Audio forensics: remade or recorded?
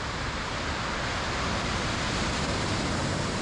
recorded